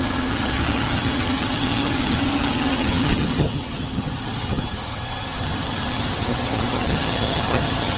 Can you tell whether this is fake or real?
fake